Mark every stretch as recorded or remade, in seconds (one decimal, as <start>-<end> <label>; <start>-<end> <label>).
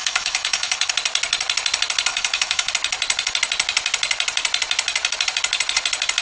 0.0-0.9 remade; 0.9-2.1 recorded; 2.1-2.7 remade; 2.7-6.2 recorded